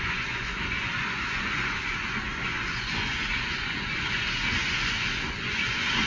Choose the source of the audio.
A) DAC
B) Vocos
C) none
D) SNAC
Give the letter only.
B